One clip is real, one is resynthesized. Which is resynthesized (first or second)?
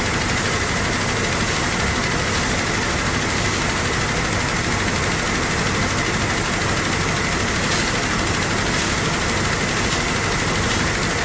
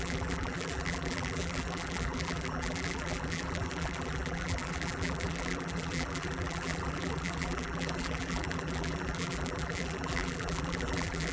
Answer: second